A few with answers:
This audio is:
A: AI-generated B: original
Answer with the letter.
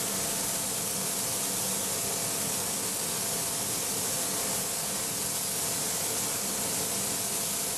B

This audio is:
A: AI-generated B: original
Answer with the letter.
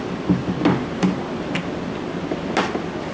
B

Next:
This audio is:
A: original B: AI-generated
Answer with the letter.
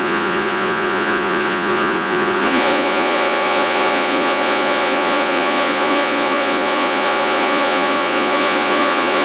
B